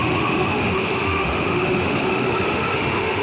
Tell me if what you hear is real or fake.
fake